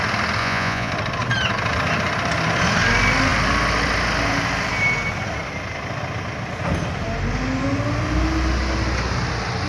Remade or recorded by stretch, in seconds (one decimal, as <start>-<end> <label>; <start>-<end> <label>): 0.0-0.4 recorded; 0.4-0.9 remade; 0.9-9.7 recorded